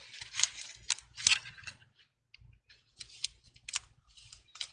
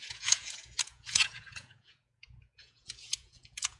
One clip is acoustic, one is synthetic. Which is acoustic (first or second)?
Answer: first